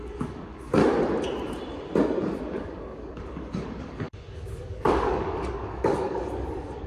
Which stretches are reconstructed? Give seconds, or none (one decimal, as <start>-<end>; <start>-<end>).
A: 0.0-0.8; 2.4-6.9